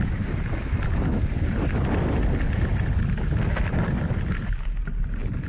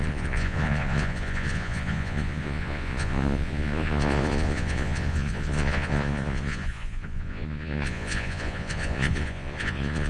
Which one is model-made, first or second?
second